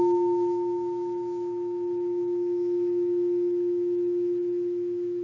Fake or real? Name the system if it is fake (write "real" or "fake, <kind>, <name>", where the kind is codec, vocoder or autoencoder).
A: fake, autoencoder, DAC-VAE